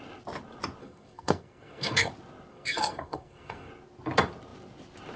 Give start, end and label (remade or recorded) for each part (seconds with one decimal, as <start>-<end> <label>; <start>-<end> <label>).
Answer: 0.0-0.8 recorded; 0.8-2.1 remade; 2.1-2.5 recorded; 2.5-3.7 remade; 3.7-5.2 recorded